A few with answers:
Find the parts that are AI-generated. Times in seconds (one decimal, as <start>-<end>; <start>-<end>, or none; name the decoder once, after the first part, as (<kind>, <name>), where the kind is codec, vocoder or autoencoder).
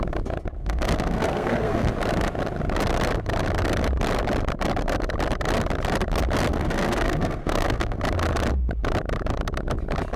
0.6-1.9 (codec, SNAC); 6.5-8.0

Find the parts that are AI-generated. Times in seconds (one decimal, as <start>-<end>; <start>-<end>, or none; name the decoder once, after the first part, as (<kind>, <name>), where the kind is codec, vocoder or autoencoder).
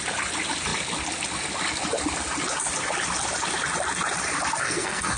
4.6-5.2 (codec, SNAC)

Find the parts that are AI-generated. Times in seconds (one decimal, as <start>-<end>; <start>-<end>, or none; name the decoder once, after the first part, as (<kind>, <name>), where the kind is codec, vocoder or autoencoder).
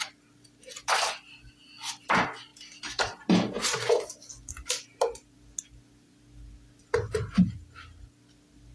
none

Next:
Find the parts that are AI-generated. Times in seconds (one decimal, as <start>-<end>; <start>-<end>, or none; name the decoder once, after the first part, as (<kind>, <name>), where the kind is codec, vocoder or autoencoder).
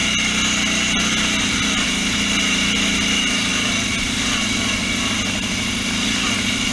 none